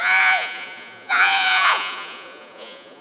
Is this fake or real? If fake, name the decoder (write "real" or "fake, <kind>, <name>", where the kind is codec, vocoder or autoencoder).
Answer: fake, vocoder, Vocos